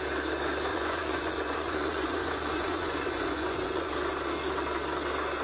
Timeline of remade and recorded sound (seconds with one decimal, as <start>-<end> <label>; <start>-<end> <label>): 0.0-0.7 recorded; 0.7-3.9 remade; 3.9-5.4 recorded